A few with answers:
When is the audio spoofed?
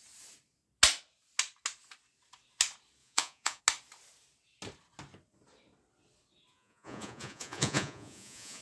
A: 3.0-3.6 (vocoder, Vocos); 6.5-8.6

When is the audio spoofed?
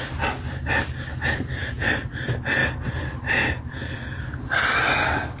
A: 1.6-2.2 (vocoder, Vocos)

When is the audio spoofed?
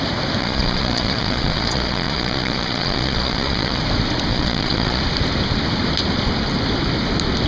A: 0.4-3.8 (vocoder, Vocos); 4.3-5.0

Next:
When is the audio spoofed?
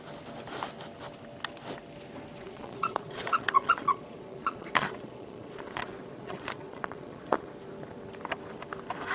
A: 2.4-7.5 (vocoder, Vocos)